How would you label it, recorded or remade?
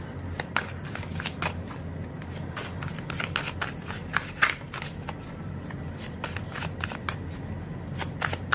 recorded